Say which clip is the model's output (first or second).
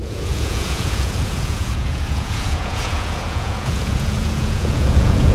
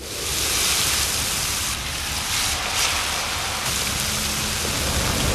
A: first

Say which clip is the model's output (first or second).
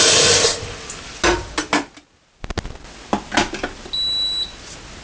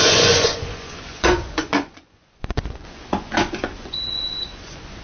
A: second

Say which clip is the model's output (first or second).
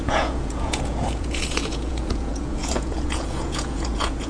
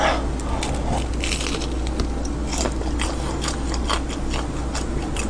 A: first